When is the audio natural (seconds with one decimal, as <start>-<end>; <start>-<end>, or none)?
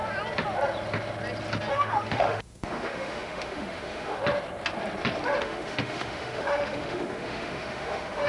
0.0-1.7; 4.2-5.4